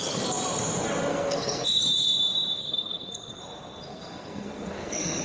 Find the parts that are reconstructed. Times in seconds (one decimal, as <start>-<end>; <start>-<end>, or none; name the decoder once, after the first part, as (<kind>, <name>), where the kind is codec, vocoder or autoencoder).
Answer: 1.1-1.8 (codec, SNAC); 2.6-3.4; 3.9-5.2